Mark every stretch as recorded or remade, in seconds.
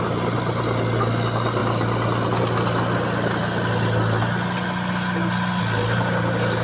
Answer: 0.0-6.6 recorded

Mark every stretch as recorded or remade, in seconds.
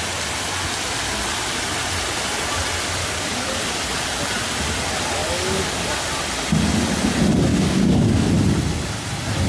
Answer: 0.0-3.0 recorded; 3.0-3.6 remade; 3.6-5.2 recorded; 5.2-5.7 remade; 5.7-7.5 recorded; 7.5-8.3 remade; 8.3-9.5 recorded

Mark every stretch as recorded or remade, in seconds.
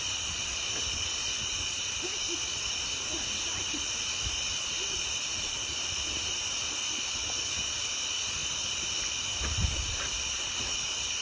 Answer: 0.0-11.2 recorded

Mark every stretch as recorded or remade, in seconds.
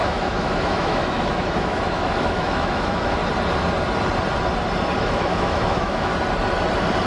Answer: 0.0-3.2 remade; 3.2-5.0 recorded; 5.0-6.1 remade; 6.1-7.1 recorded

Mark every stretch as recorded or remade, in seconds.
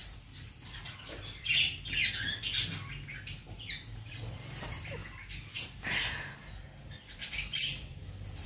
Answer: 0.0-2.0 remade; 2.0-4.1 recorded; 4.1-5.0 remade; 5.0-7.0 recorded; 7.0-8.5 remade